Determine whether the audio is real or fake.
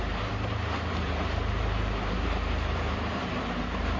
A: fake